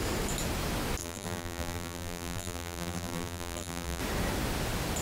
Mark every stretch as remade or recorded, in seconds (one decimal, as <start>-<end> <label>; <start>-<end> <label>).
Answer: 0.0-1.0 recorded; 1.0-4.0 remade; 4.0-5.0 recorded